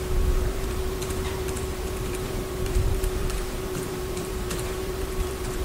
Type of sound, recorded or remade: remade